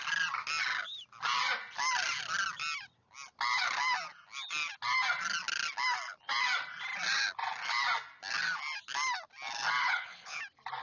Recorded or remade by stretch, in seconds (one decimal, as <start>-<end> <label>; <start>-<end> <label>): 0.0-9.8 recorded; 9.8-10.4 remade; 10.4-10.8 recorded